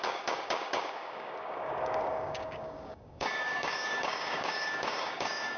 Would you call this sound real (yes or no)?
no